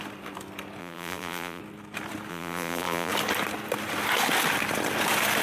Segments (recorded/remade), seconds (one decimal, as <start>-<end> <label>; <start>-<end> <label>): 0.0-0.8 recorded; 0.8-1.6 remade; 1.6-2.3 recorded; 2.3-3.1 remade; 3.1-5.4 recorded